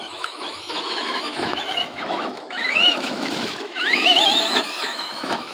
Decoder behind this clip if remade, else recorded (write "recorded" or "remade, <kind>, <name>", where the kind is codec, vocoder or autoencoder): remade, autoencoder, DAC-VAE